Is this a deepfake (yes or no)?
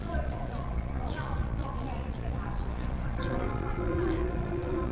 yes